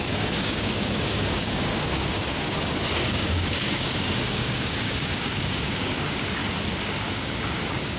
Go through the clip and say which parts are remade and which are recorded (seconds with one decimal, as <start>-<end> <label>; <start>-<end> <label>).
0.0-6.4 remade; 6.4-7.1 recorded; 7.1-8.0 remade